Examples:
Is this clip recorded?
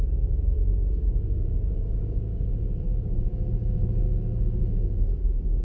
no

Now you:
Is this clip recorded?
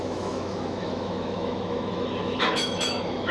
no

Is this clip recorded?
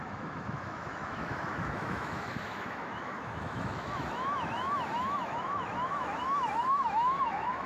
no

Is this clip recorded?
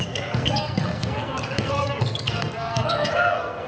no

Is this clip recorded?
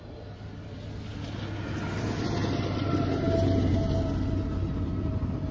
yes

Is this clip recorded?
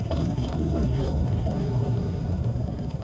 no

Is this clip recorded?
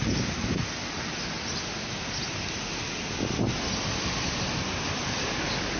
yes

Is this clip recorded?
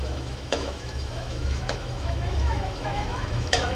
no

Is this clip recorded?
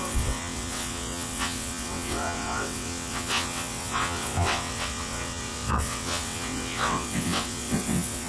no